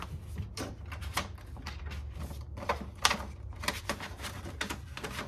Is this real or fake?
real